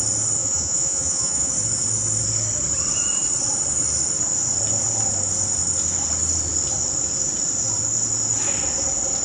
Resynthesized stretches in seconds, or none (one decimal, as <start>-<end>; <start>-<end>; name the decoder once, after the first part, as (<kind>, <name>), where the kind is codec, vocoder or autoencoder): 0.4-1.5 (vocoder, Vocos)